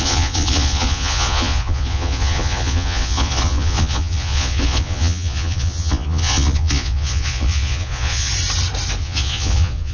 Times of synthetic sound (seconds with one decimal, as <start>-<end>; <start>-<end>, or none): 0.0-8.3; 9.0-9.9